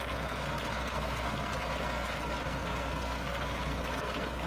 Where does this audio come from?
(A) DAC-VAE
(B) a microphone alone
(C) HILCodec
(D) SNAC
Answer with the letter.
D